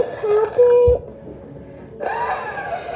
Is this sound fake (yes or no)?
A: no